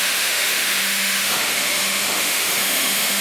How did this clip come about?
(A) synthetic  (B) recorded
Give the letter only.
A